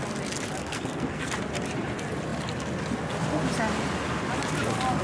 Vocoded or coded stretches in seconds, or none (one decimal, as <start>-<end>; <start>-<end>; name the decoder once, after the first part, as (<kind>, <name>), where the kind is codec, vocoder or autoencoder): 0.6-1.3 (codec, SNAC)